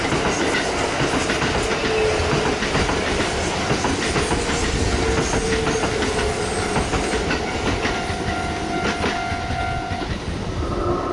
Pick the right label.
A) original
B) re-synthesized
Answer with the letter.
A